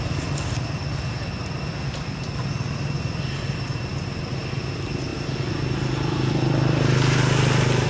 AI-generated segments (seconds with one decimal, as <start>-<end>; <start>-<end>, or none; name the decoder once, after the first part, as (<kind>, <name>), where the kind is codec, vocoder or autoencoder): none